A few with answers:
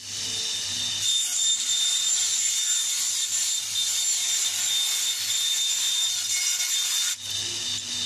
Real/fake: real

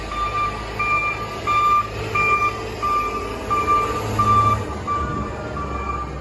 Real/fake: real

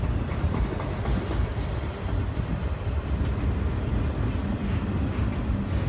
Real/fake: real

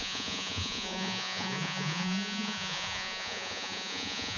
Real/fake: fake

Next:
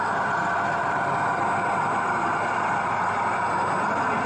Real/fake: real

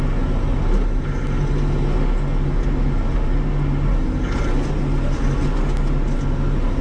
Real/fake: real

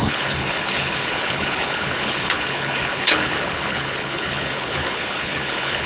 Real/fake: fake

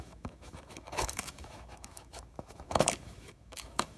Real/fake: fake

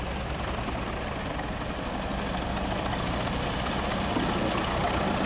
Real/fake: real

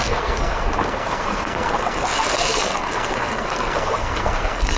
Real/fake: fake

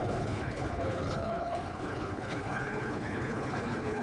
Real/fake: fake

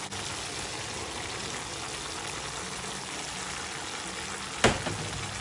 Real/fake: real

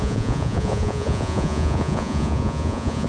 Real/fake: fake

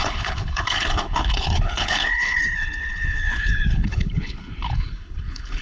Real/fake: fake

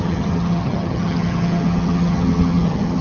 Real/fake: fake